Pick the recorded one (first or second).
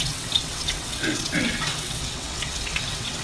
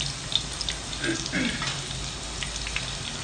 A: second